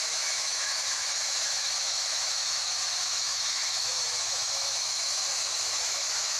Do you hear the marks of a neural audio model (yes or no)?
yes